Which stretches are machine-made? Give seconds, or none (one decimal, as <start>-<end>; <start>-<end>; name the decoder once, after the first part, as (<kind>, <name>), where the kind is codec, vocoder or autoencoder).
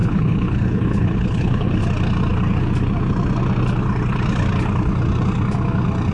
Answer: 0.0-1.8 (codec, HILCodec)